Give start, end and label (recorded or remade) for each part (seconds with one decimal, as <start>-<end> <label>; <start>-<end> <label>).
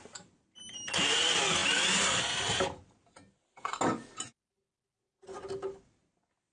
0.0-6.5 recorded